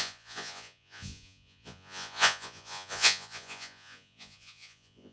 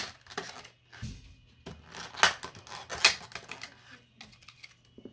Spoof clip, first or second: first